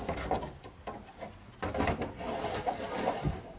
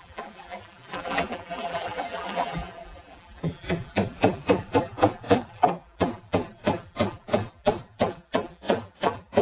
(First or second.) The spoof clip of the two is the second